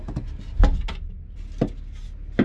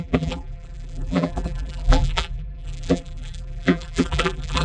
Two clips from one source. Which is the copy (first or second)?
second